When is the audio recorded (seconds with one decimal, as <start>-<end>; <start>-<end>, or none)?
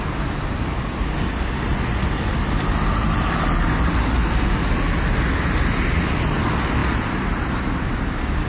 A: 0.0-8.5